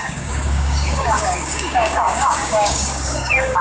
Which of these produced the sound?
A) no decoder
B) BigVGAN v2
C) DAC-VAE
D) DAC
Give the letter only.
D